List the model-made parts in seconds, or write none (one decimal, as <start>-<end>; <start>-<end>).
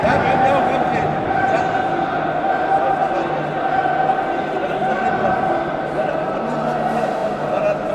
none